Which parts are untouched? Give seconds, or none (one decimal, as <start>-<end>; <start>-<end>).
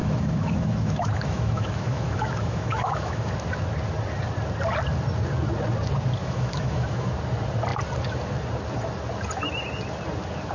3.3-6.2; 7.1-10.5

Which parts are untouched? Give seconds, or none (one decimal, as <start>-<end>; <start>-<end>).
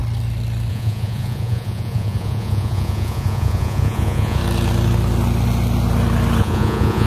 0.0-0.7; 4.4-6.4